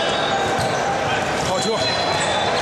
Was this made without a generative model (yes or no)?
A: yes